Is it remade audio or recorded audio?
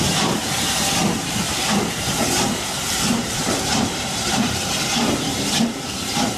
remade